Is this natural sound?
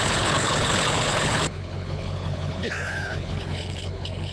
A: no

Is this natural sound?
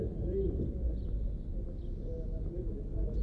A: yes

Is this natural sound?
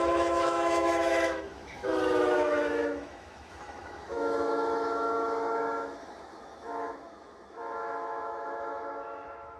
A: no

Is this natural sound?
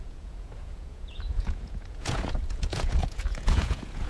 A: no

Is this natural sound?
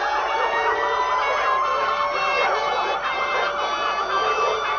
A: yes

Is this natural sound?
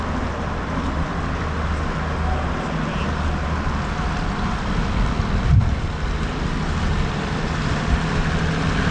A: yes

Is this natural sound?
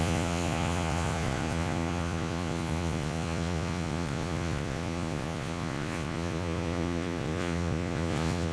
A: no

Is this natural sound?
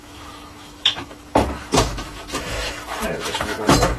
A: no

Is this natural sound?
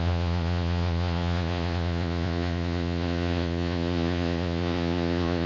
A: no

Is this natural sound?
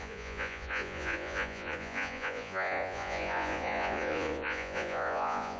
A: no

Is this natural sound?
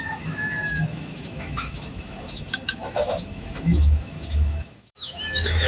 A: no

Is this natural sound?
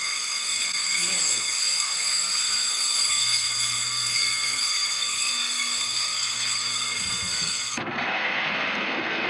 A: no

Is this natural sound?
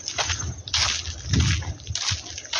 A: yes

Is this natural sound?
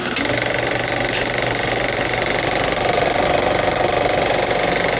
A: yes